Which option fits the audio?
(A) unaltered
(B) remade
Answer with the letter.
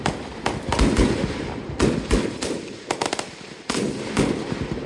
A